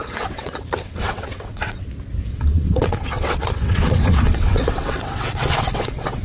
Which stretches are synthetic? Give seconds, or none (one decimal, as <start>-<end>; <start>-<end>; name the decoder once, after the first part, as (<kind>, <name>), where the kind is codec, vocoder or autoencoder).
0.0-1.8 (vocoder, WaveNeXt); 2.3-6.2